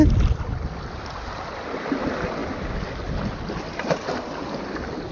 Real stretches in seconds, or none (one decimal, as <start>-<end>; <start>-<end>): 0.0-5.1

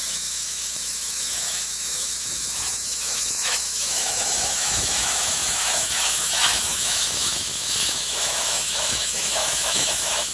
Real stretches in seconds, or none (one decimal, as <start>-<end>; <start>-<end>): none